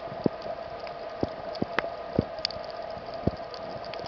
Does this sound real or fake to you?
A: real